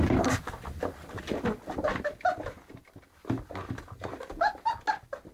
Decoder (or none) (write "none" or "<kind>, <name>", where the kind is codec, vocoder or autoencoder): none